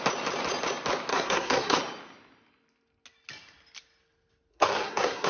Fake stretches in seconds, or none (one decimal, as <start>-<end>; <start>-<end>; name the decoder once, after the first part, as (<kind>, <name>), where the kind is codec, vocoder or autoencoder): 1.1-1.8 (codec, SNAC); 4.5-5.3